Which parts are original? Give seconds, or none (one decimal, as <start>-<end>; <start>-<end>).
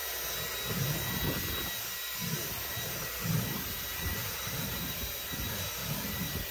0.0-3.9; 4.8-5.8